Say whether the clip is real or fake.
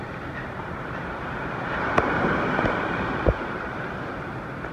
fake